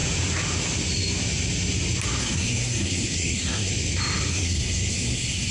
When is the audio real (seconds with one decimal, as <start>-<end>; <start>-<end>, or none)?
0.0-2.2; 3.7-4.3